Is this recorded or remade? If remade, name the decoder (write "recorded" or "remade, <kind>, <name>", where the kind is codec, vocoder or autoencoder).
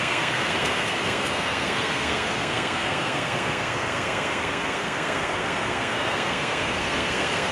remade, codec, SNAC